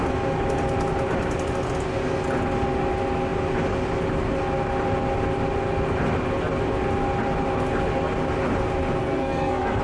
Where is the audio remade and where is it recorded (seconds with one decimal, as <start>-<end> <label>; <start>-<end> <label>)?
0.0-9.0 recorded; 9.0-9.8 remade